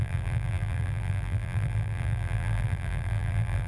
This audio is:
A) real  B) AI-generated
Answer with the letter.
B